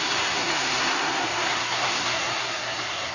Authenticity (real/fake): fake